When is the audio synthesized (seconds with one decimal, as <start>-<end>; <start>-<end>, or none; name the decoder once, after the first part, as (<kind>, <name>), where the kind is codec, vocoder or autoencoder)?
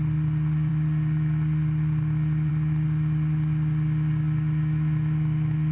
none